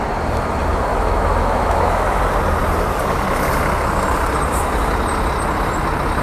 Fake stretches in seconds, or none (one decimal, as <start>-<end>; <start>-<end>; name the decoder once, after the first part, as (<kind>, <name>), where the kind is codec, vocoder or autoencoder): 0.9-2.2 (autoencoder, DAC-VAE)